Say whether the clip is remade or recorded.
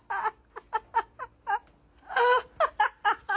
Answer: recorded